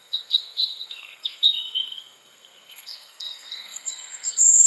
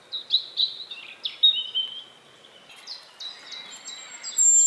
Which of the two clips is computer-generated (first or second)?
first